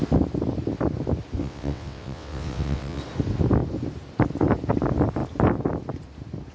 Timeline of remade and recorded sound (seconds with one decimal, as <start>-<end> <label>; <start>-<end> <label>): 0.0-1.4 recorded; 1.4-3.0 remade; 3.0-6.5 recorded